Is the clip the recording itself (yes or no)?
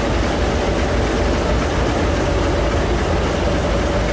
yes